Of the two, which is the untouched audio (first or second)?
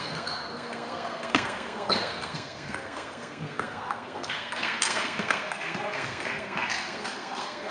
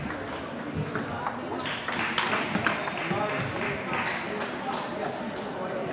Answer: second